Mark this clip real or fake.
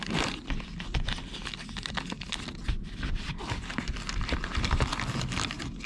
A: real